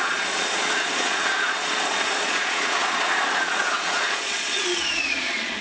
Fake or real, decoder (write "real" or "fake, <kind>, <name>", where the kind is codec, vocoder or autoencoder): fake, vocoder, Vocos